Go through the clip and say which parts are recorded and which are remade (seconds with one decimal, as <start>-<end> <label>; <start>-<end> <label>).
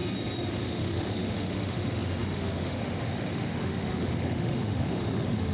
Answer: 0.0-0.5 recorded; 0.5-5.5 remade